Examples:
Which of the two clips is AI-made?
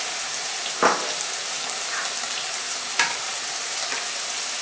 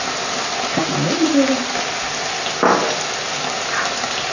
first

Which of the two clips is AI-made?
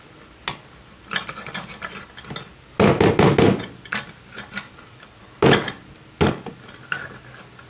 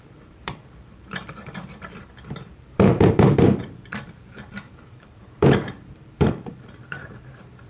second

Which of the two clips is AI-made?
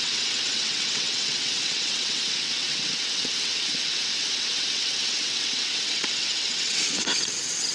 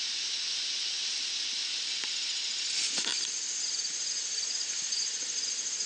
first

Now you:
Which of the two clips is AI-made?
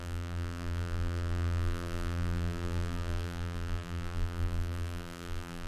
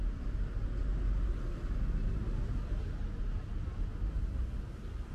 first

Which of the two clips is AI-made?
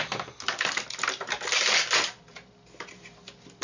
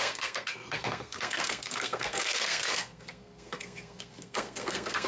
second